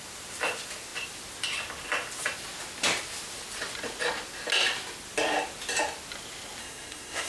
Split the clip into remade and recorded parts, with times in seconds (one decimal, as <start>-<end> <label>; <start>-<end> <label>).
0.0-6.6 recorded; 6.6-7.3 remade